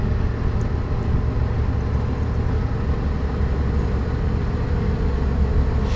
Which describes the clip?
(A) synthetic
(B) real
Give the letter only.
B